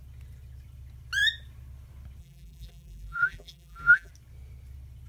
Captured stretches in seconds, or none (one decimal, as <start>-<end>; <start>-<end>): 0.0-2.2; 4.1-5.1